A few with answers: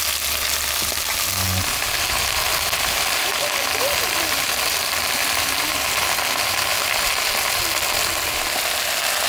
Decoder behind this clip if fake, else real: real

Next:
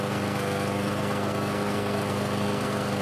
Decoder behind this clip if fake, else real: fake, codec, SNAC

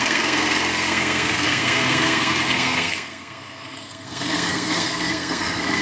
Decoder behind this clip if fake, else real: fake, codec, SNAC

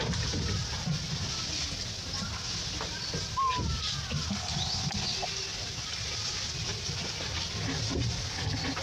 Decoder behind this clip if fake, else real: real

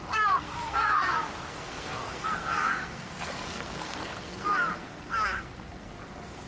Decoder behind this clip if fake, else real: fake, codec, SNAC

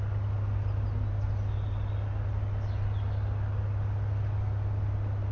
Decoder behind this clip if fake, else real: real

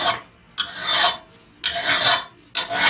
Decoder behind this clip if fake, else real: real